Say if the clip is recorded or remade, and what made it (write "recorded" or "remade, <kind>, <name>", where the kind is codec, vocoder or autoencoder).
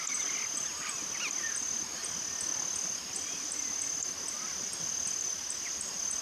recorded